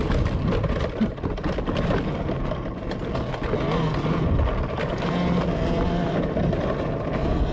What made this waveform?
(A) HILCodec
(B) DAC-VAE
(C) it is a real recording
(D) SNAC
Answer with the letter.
C